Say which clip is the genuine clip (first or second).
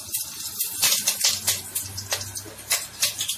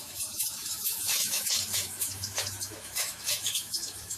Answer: first